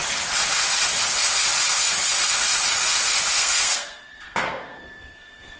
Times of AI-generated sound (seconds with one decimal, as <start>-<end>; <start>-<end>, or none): 3.3-5.6